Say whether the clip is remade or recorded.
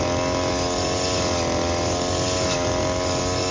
recorded